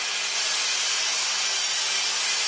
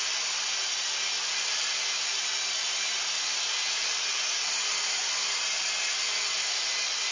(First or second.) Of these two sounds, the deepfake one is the second